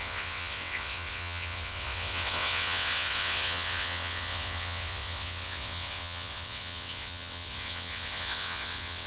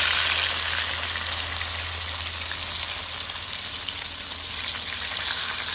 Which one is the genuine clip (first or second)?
second